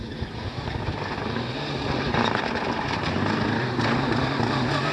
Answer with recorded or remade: recorded